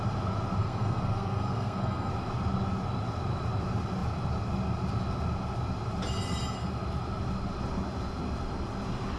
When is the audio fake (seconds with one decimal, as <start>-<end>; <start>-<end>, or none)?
0.6-2.1